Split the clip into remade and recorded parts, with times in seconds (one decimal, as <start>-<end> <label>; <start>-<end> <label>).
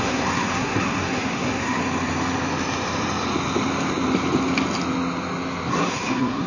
0.0-1.8 remade; 1.8-5.7 recorded; 5.7-6.5 remade